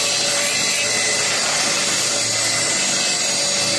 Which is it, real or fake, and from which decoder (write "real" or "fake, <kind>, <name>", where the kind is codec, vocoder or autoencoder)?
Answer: real